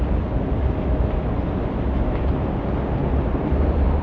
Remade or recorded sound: recorded